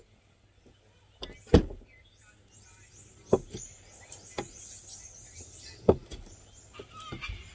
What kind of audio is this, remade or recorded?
recorded